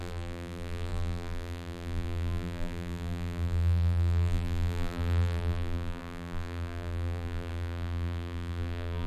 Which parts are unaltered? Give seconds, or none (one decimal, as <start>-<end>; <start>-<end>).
none